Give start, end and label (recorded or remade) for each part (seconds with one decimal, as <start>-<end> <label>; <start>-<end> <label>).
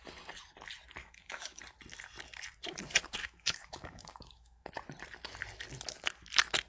0.0-1.0 recorded; 1.0-1.6 remade; 1.6-3.2 recorded; 3.2-4.7 remade; 4.7-6.7 recorded